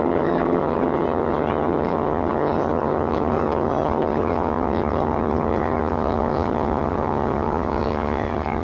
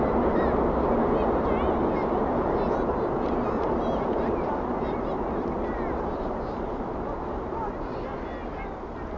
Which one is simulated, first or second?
first